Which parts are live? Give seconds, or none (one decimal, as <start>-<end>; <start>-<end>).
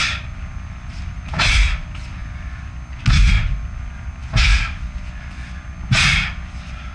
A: 0.0-6.9